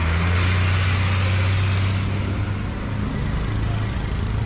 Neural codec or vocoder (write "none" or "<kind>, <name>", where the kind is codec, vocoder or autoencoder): none